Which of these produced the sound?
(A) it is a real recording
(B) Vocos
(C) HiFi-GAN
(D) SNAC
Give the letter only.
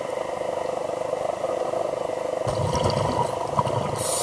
A